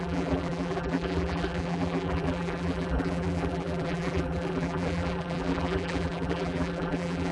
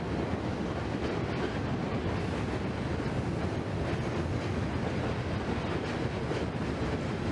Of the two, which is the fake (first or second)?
first